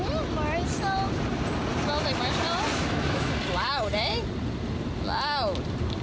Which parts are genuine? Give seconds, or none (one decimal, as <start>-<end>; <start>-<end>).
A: 0.0-2.7; 3.3-6.0